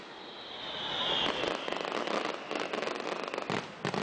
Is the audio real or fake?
real